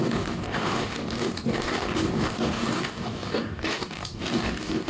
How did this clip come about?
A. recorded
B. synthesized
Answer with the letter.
B